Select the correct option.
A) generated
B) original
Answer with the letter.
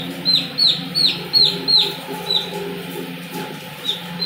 B